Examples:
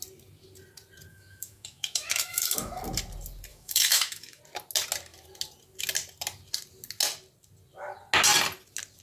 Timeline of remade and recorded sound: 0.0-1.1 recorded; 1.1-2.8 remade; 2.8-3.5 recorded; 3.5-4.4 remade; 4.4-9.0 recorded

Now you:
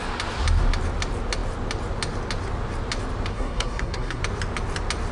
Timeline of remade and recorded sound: 0.0-3.3 recorded; 3.3-4.2 remade; 4.2-5.1 recorded

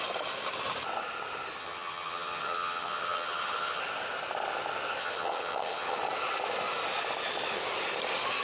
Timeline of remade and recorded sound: 0.0-1.6 recorded; 1.6-3.8 remade; 3.8-5.0 recorded; 5.0-6.0 remade; 6.0-8.4 recorded